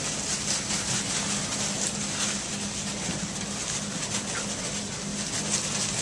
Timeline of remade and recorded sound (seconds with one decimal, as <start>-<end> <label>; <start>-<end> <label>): 0.0-6.0 recorded